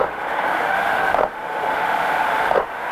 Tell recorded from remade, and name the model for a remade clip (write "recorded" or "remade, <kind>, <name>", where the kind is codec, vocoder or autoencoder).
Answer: remade, autoencoder, DAC-VAE